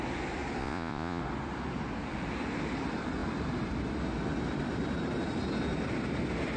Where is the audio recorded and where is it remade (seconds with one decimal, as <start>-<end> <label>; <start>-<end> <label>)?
0.0-0.6 recorded; 0.6-1.2 remade; 1.2-6.6 recorded